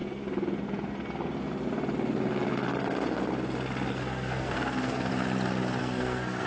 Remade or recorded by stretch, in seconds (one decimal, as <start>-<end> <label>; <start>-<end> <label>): 0.0-3.9 recorded; 3.9-5.1 remade; 5.1-5.8 recorded; 5.8-6.5 remade